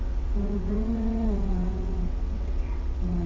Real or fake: fake